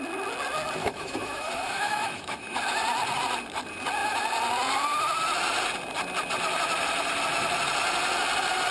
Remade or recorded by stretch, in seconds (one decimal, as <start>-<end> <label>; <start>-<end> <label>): 0.0-0.8 recorded; 0.8-2.6 remade; 2.6-8.7 recorded